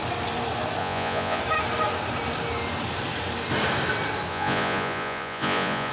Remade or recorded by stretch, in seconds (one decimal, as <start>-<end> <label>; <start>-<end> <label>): 0.0-0.8 recorded; 0.8-1.4 remade; 1.4-4.3 recorded; 4.3-5.9 remade